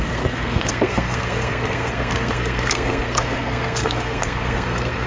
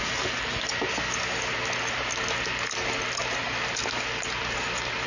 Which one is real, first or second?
second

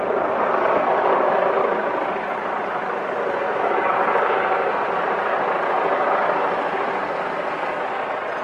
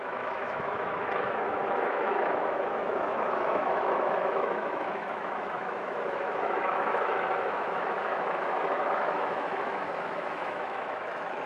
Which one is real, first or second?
first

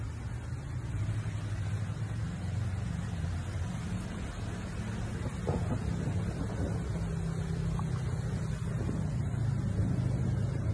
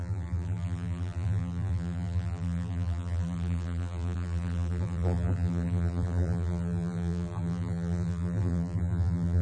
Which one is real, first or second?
first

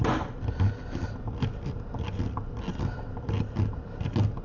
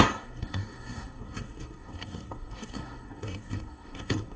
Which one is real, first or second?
first